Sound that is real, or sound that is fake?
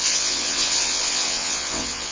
fake